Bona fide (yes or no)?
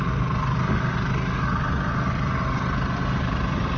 yes